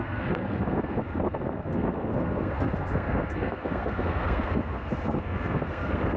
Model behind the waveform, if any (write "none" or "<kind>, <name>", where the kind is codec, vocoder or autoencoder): codec, SNAC